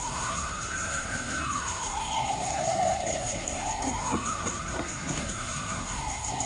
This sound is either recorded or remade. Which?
remade